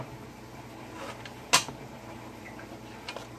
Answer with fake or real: real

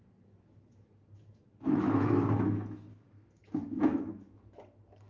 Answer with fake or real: fake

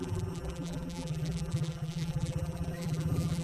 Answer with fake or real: fake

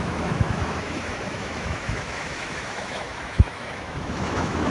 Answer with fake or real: fake